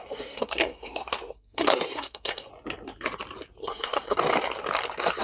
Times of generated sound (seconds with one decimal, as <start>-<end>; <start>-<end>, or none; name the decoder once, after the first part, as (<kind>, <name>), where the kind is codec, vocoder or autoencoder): 0.0-2.5 (codec, SNAC); 3.6-4.3